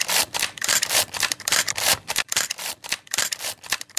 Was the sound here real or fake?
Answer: fake